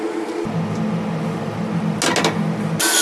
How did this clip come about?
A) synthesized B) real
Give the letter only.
B